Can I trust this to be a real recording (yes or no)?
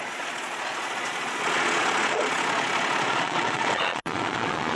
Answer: no